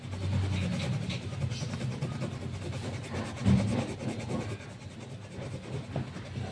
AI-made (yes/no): no